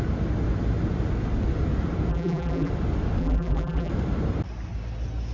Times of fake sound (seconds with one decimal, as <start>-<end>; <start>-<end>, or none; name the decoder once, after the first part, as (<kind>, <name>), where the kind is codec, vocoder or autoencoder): 2.1-2.7 (vocoder, BigVGAN v2); 3.2-3.9